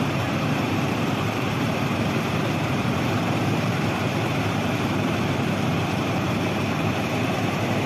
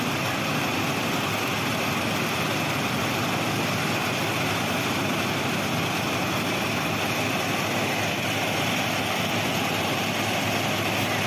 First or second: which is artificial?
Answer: first